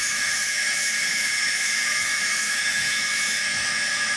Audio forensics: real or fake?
fake